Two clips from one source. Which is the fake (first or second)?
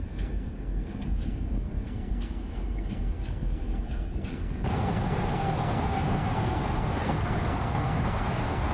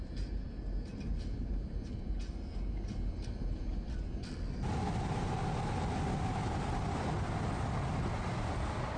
first